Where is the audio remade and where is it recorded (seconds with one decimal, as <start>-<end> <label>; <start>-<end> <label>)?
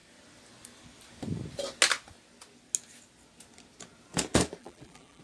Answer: 0.0-4.6 recorded; 4.6-5.2 remade